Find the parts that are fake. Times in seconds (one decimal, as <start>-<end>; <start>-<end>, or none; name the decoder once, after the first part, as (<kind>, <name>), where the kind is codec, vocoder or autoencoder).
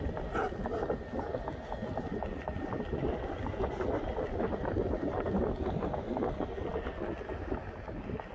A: none